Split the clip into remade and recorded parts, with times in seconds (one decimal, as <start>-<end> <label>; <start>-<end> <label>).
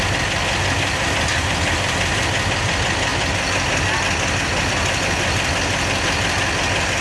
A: 0.0-7.0 recorded